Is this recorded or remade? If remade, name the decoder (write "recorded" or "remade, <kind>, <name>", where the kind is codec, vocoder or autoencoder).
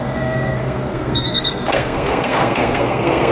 remade, codec, SNAC